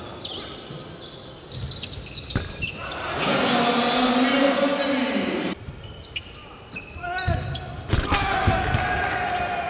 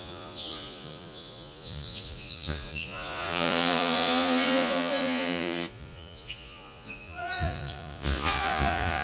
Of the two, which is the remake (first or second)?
second